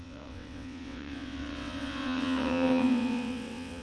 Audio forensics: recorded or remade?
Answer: remade